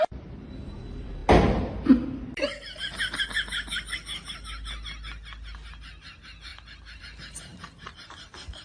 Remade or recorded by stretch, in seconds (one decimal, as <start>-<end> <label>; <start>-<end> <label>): 0.0-8.6 recorded